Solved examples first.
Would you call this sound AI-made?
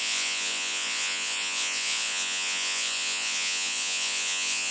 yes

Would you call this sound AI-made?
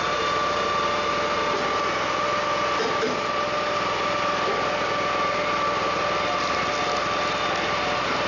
no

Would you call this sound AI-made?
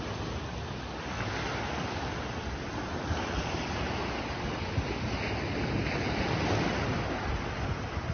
no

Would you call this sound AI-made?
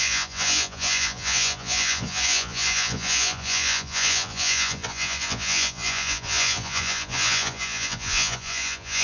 yes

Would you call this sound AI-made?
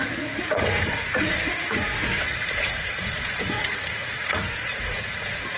yes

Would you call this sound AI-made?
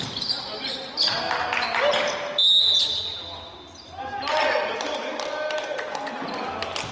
no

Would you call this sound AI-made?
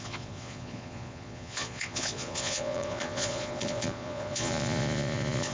yes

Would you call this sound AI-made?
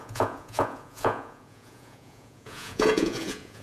yes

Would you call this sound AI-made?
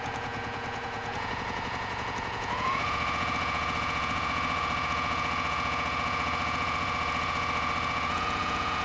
yes